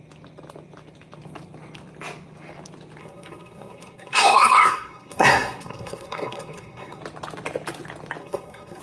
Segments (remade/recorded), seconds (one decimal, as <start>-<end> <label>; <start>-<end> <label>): 0.0-3.0 recorded; 3.0-7.0 remade; 7.0-8.2 recorded; 8.2-8.8 remade